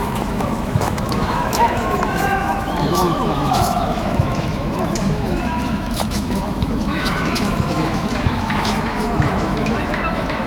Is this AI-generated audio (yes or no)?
yes